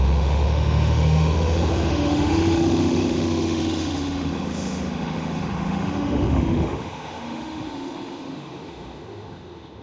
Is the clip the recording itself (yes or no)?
no